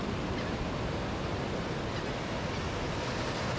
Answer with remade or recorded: recorded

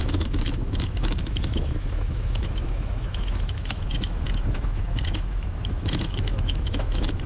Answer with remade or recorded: remade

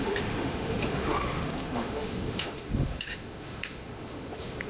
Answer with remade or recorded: remade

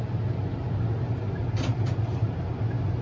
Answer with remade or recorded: recorded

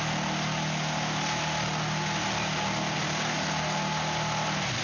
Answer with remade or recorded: recorded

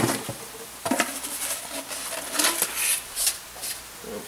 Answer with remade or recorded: recorded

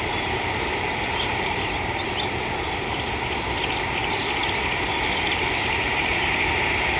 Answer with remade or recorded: remade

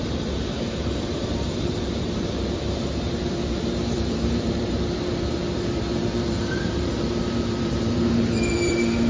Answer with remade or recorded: remade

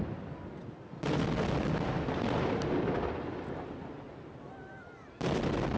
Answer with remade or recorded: recorded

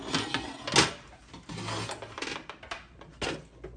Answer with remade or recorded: recorded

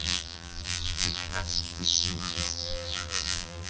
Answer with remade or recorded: remade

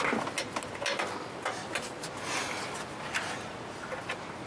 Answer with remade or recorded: recorded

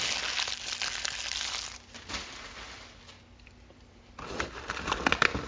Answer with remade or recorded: recorded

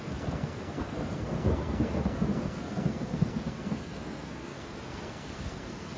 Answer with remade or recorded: remade